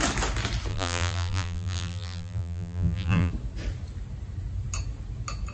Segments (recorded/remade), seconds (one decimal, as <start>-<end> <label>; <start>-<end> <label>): 0.0-0.7 recorded; 0.7-3.3 remade; 3.3-5.5 recorded

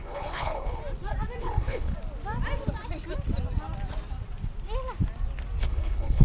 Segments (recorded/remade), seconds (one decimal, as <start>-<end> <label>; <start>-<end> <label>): 0.0-0.8 remade; 0.8-1.4 recorded; 1.4-1.9 remade; 1.9-5.6 recorded; 5.6-6.2 remade